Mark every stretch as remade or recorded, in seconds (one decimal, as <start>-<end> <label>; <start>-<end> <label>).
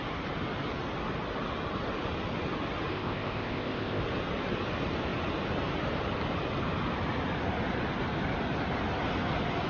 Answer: 0.0-2.9 recorded; 2.9-4.0 remade; 4.0-9.7 recorded